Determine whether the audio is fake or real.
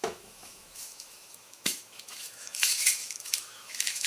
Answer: fake